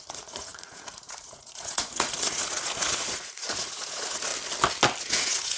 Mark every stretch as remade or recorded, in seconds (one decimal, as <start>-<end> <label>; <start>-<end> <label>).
0.0-4.3 remade; 4.3-5.0 recorded; 5.0-5.6 remade